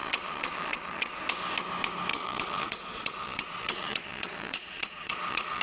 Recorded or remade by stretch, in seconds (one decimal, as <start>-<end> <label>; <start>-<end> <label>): 0.0-1.2 remade; 1.2-2.1 recorded; 2.1-5.6 remade